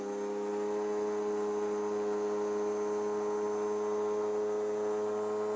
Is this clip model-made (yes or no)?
no